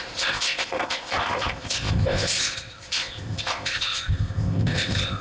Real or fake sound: fake